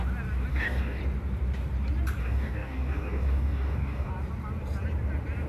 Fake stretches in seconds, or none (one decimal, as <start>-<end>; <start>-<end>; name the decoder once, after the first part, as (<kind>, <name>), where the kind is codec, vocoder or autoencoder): 0.5-1.0 (codec, DAC); 2.2-4.1